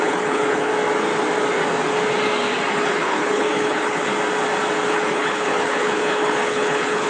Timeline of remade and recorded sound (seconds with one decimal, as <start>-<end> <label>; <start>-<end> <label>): 0.0-0.7 remade; 0.7-2.7 recorded; 2.7-4.1 remade; 4.1-4.9 recorded; 4.9-7.1 remade